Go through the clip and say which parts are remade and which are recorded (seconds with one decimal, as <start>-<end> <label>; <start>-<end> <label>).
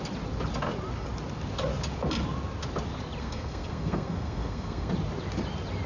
0.0-3.2 recorded; 3.2-4.9 remade; 4.9-5.9 recorded